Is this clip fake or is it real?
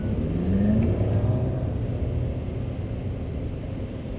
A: real